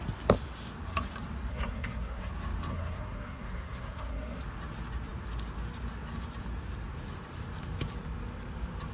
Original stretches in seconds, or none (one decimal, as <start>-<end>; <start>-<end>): 0.0-1.5; 2.3-2.7; 4.4-8.9